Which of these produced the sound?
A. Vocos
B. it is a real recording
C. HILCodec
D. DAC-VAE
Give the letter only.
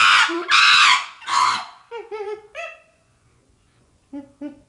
A